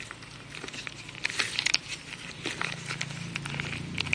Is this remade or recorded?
recorded